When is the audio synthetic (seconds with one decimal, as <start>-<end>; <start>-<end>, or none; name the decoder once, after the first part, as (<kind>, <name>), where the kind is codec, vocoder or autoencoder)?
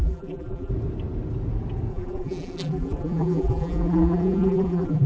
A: 0.0-0.7 (vocoder, BigVGAN v2); 1.9-5.1